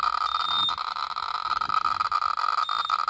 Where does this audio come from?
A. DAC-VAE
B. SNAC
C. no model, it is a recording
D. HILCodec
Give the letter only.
C